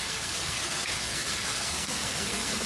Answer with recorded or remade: remade